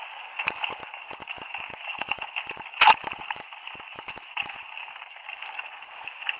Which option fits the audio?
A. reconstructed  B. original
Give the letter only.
A